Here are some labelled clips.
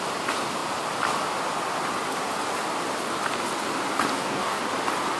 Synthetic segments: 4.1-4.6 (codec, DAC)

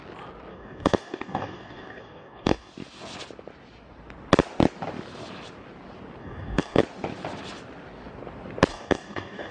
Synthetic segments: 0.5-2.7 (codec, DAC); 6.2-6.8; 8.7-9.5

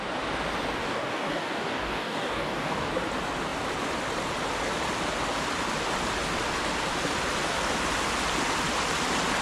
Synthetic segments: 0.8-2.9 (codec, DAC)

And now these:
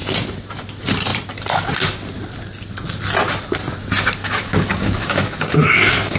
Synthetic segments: 4.2-6.2 (codec, DAC)

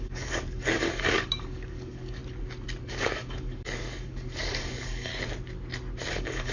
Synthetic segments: 0.0-2.2 (codec, DAC); 2.8-5.1; 6.1-6.5